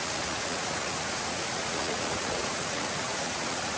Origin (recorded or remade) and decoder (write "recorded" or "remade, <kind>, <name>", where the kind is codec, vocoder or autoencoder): remade, vocoder, Vocos